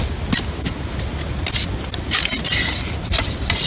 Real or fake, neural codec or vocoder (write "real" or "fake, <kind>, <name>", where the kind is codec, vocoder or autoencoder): real